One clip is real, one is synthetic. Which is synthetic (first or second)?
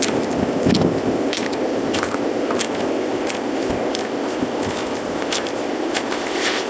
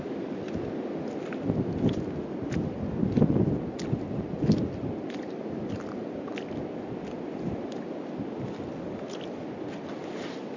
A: first